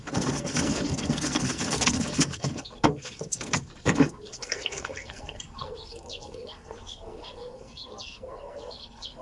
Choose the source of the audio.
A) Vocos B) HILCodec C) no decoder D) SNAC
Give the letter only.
D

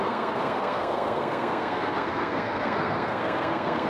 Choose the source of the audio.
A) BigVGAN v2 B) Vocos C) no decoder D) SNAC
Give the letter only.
D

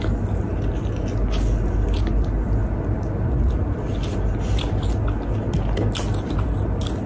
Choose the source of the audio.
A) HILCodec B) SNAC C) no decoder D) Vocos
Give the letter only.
C